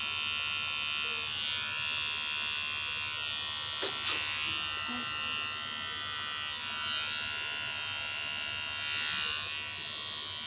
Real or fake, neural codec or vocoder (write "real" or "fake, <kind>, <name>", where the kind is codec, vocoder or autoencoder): real